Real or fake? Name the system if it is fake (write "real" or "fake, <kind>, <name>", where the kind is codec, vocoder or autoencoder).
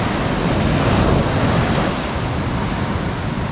real